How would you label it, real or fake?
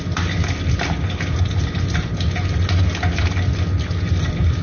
real